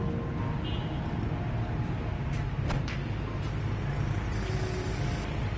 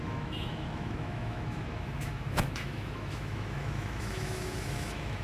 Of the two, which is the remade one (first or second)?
second